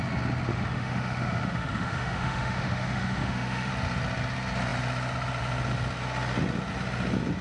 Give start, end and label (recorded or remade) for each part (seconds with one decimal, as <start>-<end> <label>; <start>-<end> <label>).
0.0-0.5 recorded; 0.5-3.7 remade; 3.7-7.4 recorded